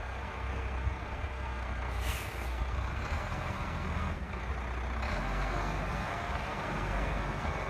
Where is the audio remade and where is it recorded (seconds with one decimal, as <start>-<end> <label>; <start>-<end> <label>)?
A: 0.0-4.5 remade; 4.5-5.1 recorded; 5.1-7.7 remade